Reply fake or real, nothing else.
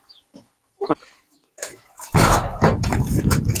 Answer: fake